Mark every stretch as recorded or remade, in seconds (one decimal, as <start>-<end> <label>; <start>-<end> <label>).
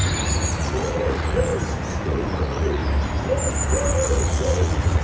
0.0-0.6 recorded; 0.6-1.5 remade; 1.5-2.0 recorded; 2.0-2.8 remade; 2.8-3.9 recorded; 3.9-5.0 remade